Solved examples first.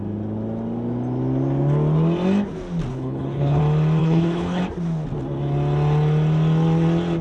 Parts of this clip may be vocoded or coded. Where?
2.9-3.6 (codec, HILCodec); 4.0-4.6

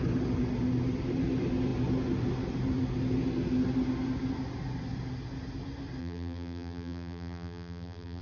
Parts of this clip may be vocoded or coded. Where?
6.0-8.2 (vocoder, BigVGAN v2)

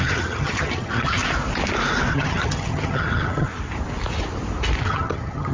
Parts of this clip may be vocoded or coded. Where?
0.0-1.2 (vocoder, HiFi-GAN); 2.1-3.5; 4.8-5.5

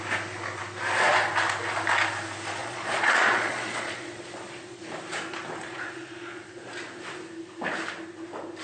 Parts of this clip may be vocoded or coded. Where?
2.6-4.8 (vocoder, Vocos); 5.6-6.7

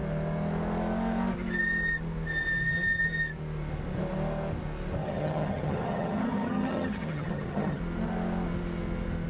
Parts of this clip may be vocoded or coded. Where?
5.0-7.8 (vocoder, HiFi-GAN)

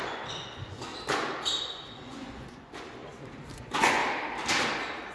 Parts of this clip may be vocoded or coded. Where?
0.0-0.9 (vocoder, Vocos); 1.6-3.0; 3.5-4.0

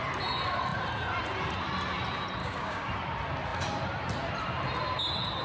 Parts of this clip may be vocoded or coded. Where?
2.4-2.9 (codec, DAC)